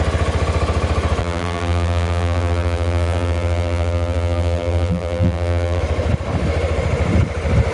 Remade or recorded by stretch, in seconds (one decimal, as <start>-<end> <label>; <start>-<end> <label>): 0.0-1.2 recorded; 1.2-5.8 remade; 5.8-7.7 recorded

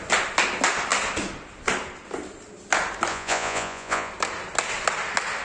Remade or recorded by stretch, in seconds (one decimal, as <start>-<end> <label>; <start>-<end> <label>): 0.0-3.1 recorded; 3.1-4.1 remade; 4.1-5.4 recorded

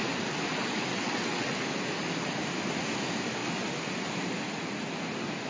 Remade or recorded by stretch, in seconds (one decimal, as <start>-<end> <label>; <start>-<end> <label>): 0.0-0.9 recorded; 0.9-1.5 remade; 1.5-5.5 recorded

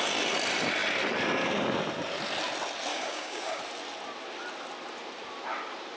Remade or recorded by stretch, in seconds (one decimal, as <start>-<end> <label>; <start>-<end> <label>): 0.0-2.9 recorded; 2.9-3.6 remade; 3.6-6.0 recorded

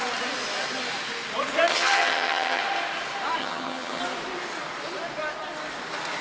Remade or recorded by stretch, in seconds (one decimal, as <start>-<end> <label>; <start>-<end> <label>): 0.0-1.7 recorded; 1.7-2.6 remade; 2.6-3.4 recorded; 3.4-4.0 remade; 4.0-6.2 recorded